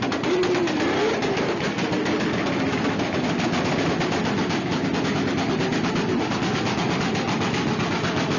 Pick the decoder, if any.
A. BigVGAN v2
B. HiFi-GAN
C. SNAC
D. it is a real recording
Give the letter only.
D